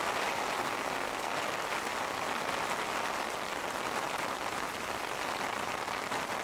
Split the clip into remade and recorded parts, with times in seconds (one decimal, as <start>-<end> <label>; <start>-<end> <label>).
0.0-0.6 recorded; 0.6-1.4 remade; 1.4-6.4 recorded